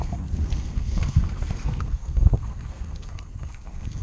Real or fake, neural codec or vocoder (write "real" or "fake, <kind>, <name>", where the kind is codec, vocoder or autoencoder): fake, codec, SNAC